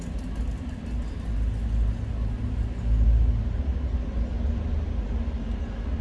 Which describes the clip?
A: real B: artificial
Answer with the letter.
A